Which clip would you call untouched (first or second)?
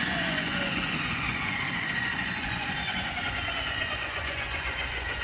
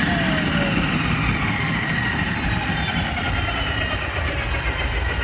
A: second